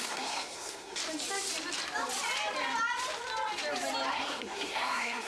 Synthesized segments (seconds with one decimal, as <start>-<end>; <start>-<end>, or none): 0.0-1.0; 4.1-5.3